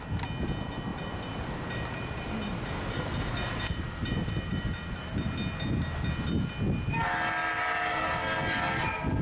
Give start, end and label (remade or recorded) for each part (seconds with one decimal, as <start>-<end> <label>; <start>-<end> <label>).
0.0-0.9 recorded; 0.9-5.3 remade; 5.3-7.4 recorded; 7.4-8.2 remade; 8.2-9.2 recorded